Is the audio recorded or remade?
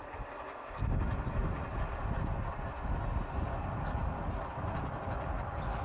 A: recorded